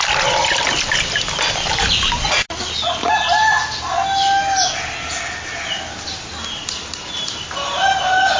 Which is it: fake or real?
real